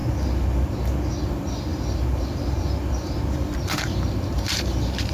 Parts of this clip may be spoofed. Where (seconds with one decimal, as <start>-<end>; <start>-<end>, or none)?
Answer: 1.2-5.1